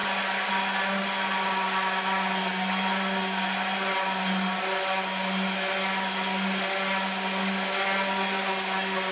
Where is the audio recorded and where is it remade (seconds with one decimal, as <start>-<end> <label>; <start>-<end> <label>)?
0.0-9.1 recorded